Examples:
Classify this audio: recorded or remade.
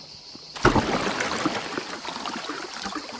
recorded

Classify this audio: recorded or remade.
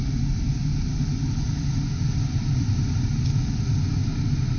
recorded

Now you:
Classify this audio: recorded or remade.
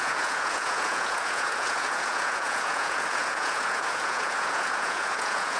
remade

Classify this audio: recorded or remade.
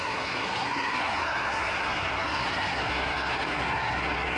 remade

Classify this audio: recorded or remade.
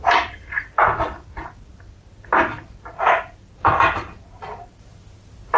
recorded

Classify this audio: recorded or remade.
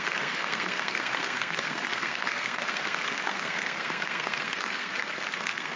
remade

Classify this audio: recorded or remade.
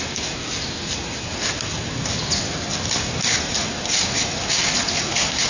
recorded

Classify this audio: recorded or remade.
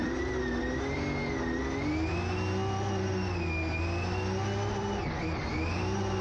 recorded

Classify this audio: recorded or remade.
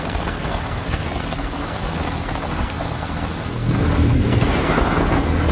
remade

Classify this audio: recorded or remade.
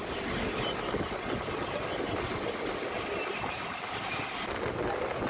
recorded